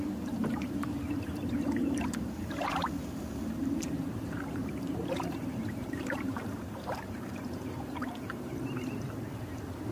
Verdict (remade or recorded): remade